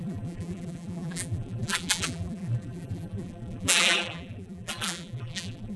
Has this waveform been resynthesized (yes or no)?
yes